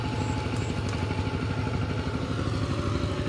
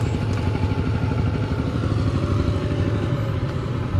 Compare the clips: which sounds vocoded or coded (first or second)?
second